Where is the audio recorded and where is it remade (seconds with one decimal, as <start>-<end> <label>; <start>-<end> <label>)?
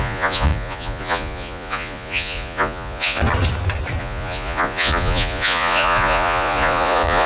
0.0-3.2 remade; 3.2-4.0 recorded; 4.0-7.3 remade